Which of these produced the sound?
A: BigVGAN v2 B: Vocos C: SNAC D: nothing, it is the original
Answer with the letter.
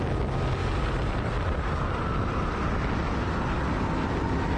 D